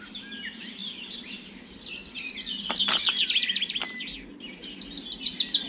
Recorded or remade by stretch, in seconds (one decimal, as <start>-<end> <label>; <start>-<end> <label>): 0.0-5.7 recorded